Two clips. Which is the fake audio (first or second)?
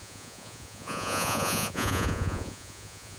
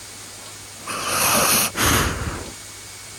first